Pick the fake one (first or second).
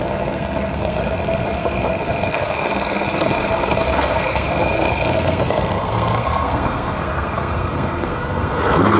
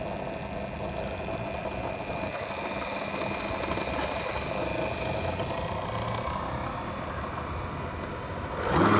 first